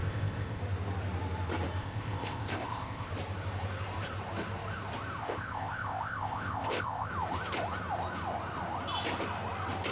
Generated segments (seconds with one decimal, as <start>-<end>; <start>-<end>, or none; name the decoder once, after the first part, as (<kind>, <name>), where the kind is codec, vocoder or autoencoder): 0.0-0.6 (codec, ZipCodec); 1.8-3.1; 5.2-7.1